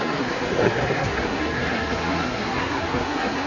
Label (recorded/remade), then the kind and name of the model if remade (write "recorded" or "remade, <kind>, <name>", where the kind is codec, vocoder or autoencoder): remade, codec, SNAC